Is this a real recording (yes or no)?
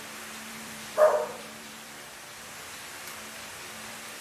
no